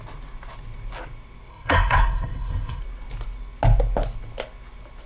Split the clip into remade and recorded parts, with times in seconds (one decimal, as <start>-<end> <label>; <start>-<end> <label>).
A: 0.0-1.5 recorded; 1.5-2.8 remade; 2.8-5.1 recorded